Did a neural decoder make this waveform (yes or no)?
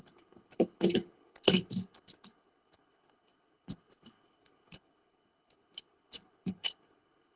yes